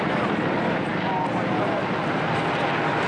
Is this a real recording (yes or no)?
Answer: yes